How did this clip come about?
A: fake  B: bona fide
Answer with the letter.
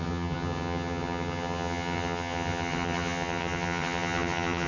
A